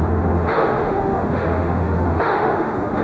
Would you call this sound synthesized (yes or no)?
yes